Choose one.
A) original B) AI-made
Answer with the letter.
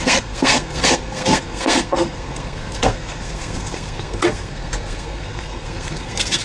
B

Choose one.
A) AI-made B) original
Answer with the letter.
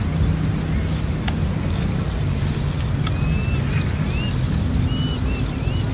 B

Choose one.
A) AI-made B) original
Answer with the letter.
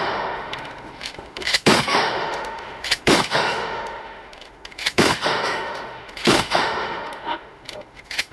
A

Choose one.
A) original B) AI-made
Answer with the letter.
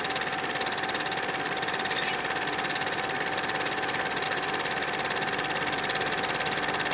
A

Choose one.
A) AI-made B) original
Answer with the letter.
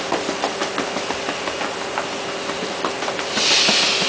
B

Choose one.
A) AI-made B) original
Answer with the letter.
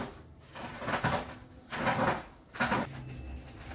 B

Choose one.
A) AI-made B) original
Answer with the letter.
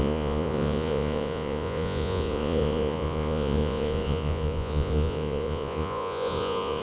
A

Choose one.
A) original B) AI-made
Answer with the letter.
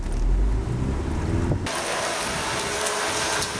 A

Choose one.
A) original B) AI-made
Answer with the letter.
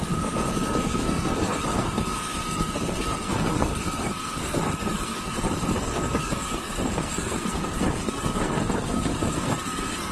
B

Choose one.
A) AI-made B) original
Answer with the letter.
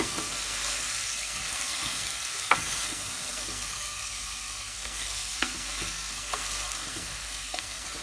A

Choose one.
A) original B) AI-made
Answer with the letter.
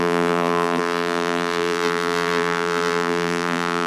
B